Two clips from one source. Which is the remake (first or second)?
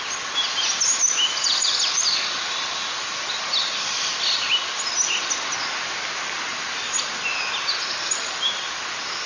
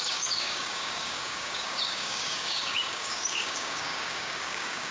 second